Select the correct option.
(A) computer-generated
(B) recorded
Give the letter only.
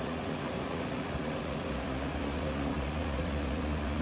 A